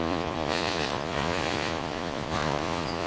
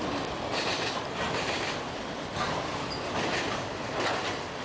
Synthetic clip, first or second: first